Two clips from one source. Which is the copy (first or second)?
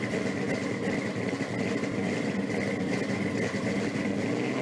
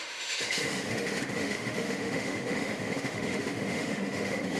second